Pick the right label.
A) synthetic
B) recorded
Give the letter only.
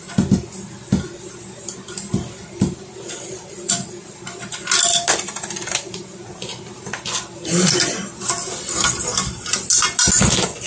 B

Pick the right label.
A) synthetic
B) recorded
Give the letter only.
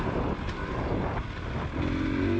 B